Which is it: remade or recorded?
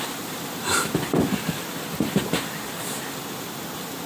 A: recorded